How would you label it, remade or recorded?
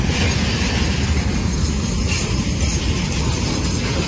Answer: recorded